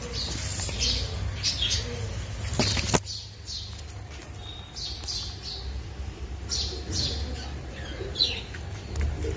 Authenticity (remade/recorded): recorded